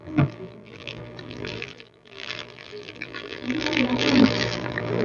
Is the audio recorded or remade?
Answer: remade